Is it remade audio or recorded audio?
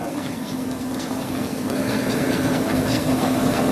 remade